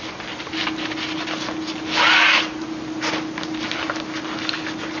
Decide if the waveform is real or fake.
real